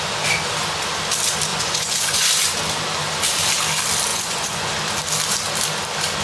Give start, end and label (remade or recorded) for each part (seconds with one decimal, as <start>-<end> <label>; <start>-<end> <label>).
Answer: 0.0-1.5 recorded; 1.5-2.3 remade; 2.3-4.1 recorded; 4.1-4.7 remade; 4.7-6.2 recorded